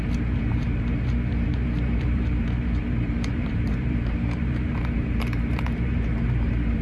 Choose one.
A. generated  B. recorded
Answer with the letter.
A